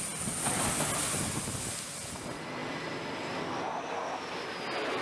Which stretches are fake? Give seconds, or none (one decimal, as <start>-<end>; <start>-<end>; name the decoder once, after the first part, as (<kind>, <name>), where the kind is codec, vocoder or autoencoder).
2.6-3.9 (vocoder, BigVGAN v2)